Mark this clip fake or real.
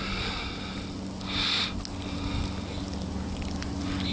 real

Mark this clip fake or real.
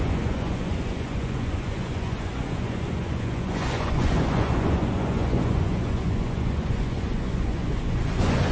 fake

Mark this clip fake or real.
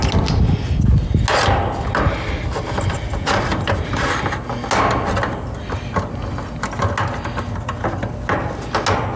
real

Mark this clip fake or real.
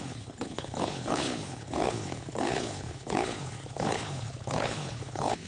fake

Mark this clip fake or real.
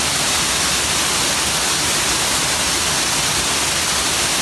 real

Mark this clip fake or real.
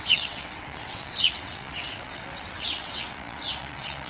fake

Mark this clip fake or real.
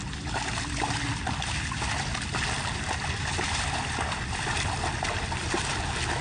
real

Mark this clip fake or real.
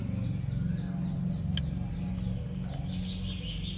real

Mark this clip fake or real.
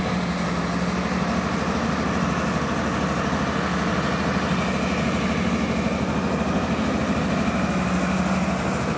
real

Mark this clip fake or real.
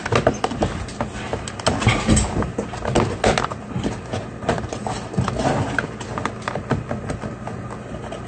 real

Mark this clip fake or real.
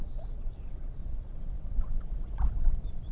fake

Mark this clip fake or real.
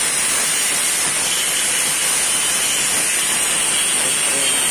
real